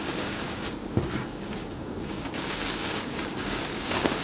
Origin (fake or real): fake